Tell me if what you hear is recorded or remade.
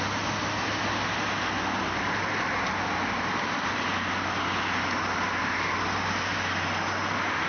recorded